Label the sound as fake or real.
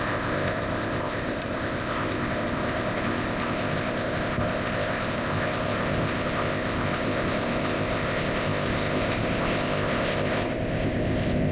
fake